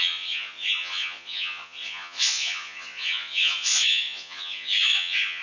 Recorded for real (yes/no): no